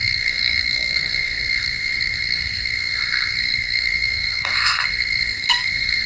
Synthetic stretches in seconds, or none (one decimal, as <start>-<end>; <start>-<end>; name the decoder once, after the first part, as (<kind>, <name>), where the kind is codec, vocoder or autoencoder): 0.0-6.1 (codec, SNAC)